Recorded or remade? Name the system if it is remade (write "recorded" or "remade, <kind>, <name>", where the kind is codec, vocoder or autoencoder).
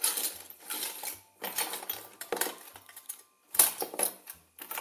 remade, vocoder, BigVGAN v2